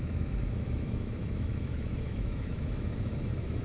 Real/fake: fake